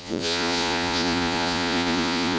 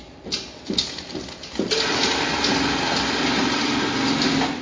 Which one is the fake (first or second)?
first